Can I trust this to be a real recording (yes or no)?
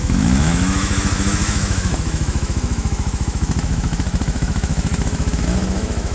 no